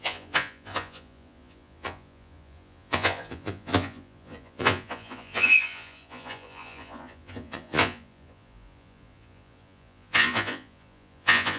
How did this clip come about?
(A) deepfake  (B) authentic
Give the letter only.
A